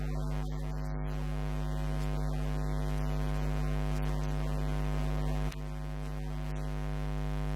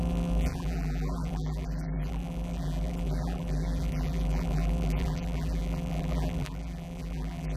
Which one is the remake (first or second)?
second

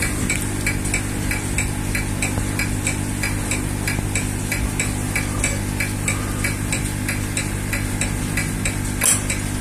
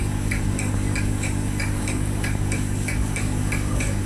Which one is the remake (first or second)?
second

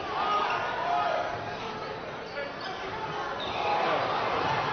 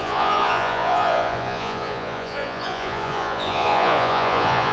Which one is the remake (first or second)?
second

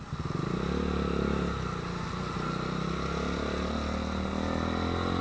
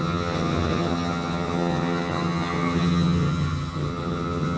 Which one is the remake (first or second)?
second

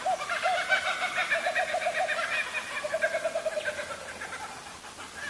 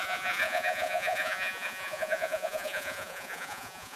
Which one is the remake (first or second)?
second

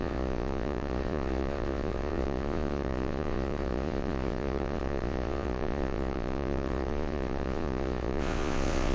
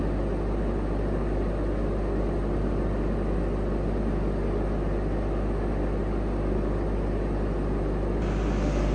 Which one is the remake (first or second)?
first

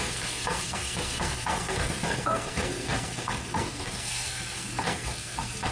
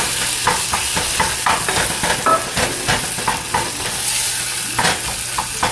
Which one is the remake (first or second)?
first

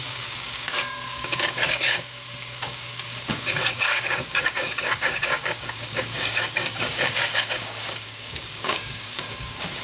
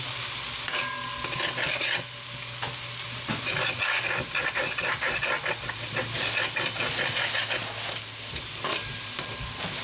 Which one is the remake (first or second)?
first